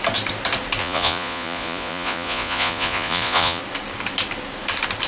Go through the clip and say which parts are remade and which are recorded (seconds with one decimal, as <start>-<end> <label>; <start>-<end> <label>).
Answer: 0.0-0.8 recorded; 0.8-3.6 remade; 3.6-5.1 recorded